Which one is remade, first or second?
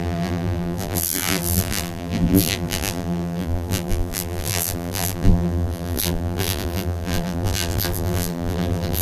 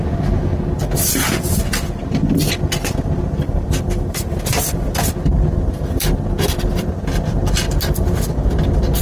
first